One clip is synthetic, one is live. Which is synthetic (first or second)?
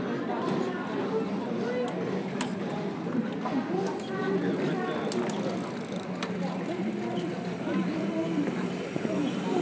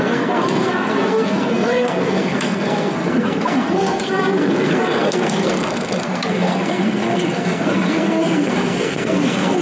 second